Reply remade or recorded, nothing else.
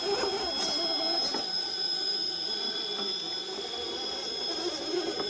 recorded